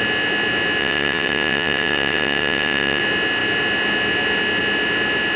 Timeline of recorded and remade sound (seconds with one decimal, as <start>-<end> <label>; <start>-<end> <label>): 0.0-0.8 recorded; 0.8-3.0 remade; 3.0-5.4 recorded